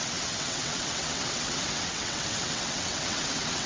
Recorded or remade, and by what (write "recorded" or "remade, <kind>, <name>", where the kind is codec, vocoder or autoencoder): remade, vocoder, WaveNeXt